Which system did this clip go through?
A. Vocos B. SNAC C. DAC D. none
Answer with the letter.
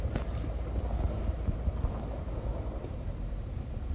D